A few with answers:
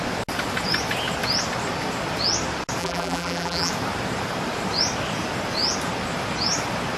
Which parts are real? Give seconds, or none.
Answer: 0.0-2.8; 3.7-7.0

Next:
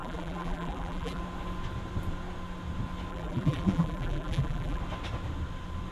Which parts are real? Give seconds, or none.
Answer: 1.2-3.1; 4.8-5.9